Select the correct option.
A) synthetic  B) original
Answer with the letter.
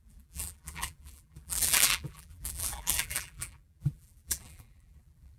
A